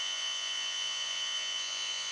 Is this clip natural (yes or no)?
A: no